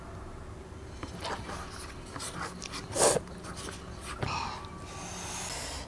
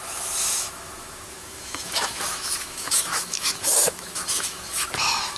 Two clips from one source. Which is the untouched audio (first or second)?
first